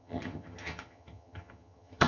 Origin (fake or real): fake